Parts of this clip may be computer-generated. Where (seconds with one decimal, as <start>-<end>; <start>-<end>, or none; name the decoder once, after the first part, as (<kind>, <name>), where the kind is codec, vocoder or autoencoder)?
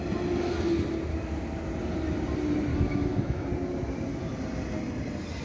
2.7-3.5 (autoencoder, DAC-VAE)